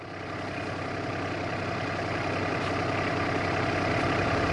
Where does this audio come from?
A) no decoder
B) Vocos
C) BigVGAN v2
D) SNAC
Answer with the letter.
A